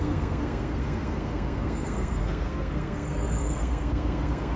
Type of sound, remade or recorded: remade